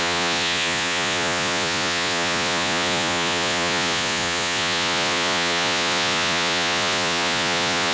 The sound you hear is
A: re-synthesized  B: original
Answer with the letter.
A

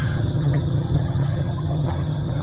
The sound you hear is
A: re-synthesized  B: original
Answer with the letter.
A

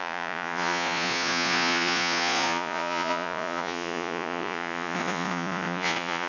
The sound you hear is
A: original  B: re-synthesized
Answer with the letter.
B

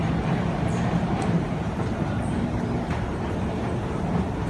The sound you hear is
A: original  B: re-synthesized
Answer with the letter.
B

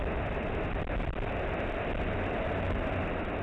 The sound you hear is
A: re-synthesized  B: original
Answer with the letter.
B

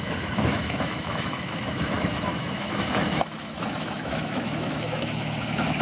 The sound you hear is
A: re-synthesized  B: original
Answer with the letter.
A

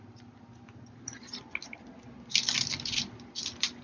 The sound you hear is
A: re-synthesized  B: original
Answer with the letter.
B